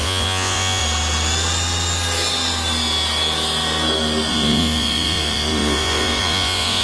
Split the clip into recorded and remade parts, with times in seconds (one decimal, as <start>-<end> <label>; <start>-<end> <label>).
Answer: 0.0-0.8 remade; 0.8-4.3 recorded; 4.3-6.8 remade